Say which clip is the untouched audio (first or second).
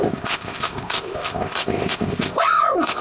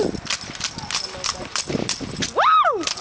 second